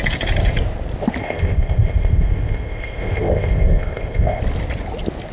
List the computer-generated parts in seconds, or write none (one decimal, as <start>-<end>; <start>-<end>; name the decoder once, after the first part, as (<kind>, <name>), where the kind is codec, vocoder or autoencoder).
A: 1.2-4.4 (codec, ZipCodec)